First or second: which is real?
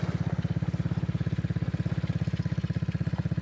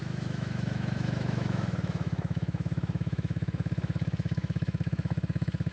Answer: first